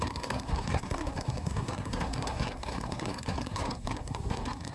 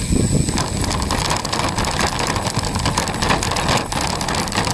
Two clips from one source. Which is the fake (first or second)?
first